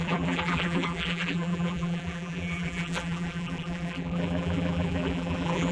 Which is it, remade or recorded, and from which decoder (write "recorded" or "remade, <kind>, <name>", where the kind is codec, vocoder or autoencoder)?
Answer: remade, vocoder, BigVGAN v2